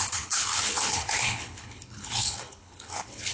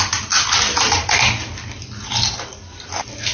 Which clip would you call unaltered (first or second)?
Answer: second